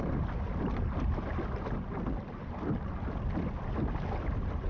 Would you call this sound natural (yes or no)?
yes